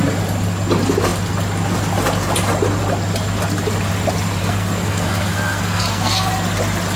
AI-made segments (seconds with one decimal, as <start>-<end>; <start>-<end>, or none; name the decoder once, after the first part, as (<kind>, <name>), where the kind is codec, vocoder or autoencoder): 4.4-6.3 (codec, SNAC)